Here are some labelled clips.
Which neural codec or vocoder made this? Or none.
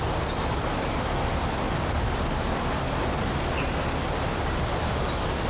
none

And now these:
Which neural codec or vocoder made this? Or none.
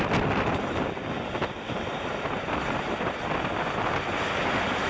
none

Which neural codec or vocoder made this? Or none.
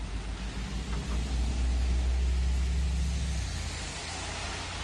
none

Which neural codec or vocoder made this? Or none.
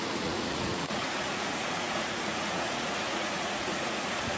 vocoder, Vocos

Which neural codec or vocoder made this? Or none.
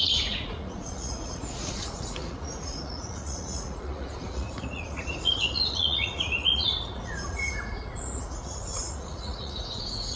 vocoder, Vocos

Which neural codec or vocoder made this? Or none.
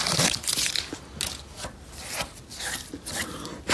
none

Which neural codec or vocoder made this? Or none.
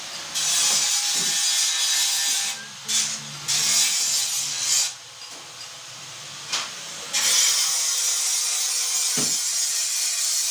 none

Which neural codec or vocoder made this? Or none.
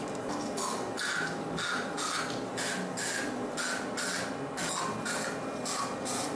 none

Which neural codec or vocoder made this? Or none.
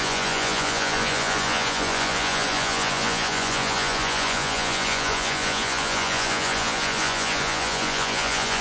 vocoder, Vocos